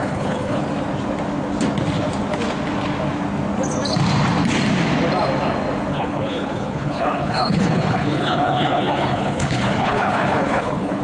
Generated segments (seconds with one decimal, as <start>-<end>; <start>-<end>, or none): 0.0-0.6; 5.9-11.0